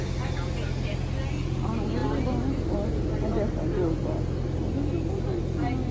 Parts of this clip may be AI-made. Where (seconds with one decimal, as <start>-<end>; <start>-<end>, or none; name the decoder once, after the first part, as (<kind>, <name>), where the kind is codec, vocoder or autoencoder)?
none